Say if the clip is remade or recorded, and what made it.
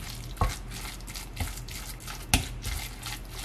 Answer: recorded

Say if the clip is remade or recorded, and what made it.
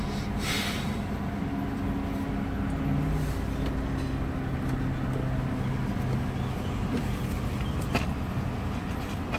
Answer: recorded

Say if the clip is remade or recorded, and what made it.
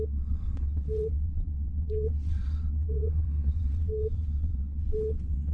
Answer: remade, vocoder, WaveNeXt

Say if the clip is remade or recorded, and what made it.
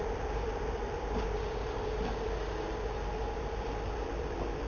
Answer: remade, vocoder, BigVGAN v2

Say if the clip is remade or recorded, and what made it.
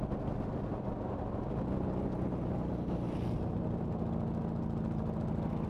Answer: recorded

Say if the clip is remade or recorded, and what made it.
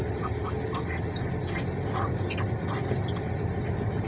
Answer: recorded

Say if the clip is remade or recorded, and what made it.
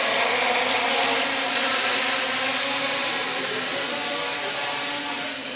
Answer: recorded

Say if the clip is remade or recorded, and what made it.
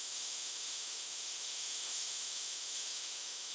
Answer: remade, autoencoder, DAC-VAE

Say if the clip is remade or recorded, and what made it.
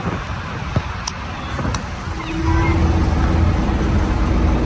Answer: recorded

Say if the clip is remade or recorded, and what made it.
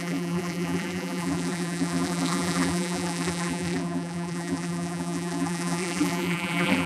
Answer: remade, vocoder, BigVGAN v2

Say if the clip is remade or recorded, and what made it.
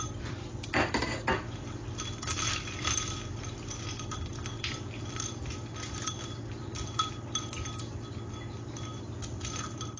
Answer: recorded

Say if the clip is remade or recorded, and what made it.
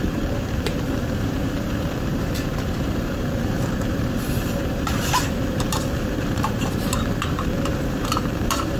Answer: remade, vocoder, BigVGAN v2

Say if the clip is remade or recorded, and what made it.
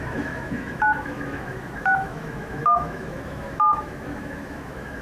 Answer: remade, autoencoder, DAC-VAE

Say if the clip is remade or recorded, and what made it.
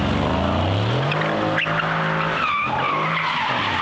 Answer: recorded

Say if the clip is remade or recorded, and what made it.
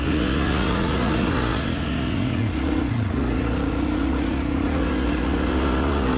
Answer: remade, vocoder, Vocos